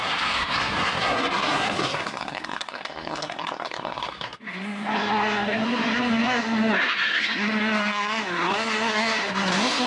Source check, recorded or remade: remade